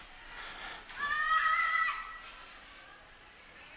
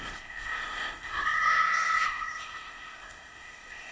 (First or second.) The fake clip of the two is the second